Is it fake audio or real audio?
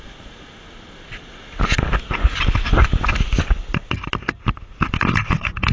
real